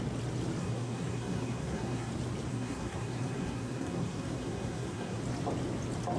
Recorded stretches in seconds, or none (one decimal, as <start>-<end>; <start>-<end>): 0.0-0.6; 2.1-2.5; 5.2-6.2